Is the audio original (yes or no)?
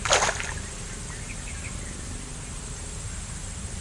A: yes